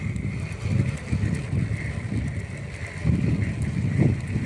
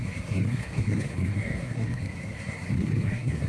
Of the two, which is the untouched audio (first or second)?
first